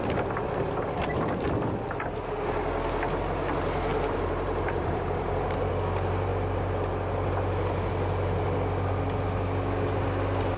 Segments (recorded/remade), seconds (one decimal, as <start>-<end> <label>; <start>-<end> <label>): 0.0-3.9 recorded; 3.9-5.7 remade; 5.7-10.6 recorded